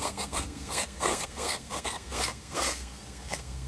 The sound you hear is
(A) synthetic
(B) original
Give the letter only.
A